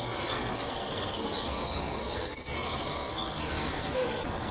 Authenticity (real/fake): fake